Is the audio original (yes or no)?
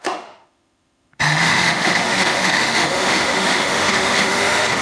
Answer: no